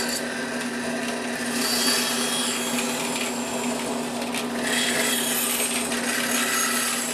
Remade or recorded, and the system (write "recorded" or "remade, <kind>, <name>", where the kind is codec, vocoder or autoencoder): recorded